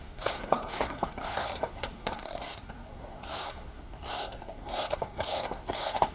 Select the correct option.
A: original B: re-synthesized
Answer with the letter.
B